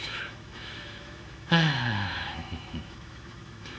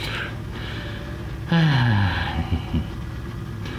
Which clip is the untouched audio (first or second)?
second